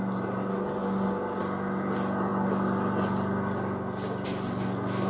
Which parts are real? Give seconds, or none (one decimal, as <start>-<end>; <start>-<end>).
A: 0.0-5.1